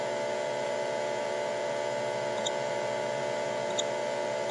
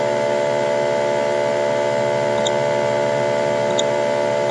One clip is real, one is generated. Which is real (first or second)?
second